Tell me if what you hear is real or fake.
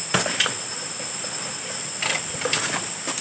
real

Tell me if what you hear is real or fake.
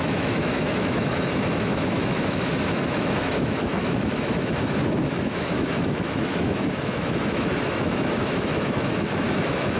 fake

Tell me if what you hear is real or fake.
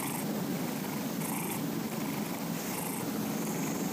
real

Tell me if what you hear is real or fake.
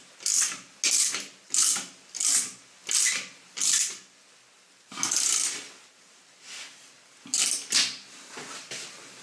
real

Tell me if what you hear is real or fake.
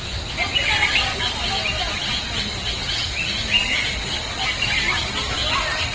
real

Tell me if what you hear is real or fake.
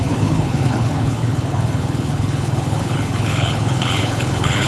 fake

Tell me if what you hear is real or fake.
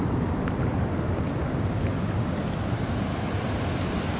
real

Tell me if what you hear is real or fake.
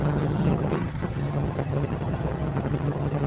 fake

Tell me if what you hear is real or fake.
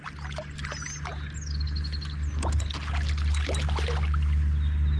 real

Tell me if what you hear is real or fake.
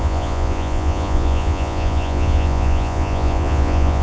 fake